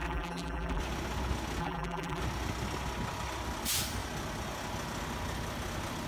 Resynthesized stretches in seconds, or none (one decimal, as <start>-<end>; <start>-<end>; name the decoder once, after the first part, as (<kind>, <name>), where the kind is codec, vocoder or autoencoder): 0.0-0.8 (vocoder, BigVGAN v2); 1.6-2.2